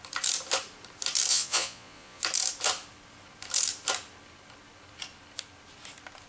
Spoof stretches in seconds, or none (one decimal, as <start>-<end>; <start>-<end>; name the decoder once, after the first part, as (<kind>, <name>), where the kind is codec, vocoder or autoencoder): 1.3-2.2 (vocoder, Vocos)